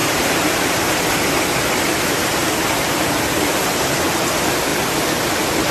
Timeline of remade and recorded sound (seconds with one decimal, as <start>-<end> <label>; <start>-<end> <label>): 0.0-1.3 remade; 1.3-2.4 recorded; 2.4-4.0 remade; 4.0-5.7 recorded